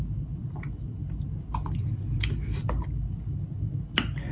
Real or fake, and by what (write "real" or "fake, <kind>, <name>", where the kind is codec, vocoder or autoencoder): real